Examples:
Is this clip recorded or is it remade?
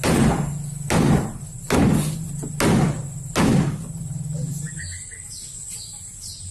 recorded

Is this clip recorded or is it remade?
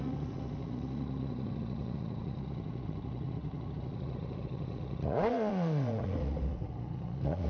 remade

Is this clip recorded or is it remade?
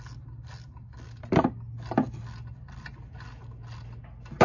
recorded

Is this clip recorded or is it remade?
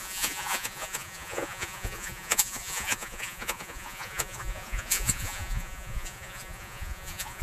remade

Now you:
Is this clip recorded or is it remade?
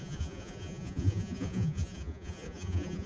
remade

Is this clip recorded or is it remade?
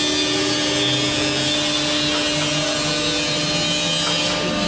recorded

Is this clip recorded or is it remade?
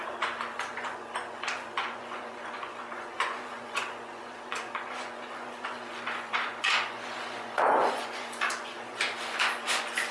remade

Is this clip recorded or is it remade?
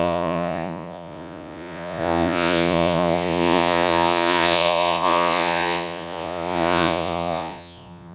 remade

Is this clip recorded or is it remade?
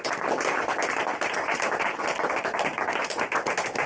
recorded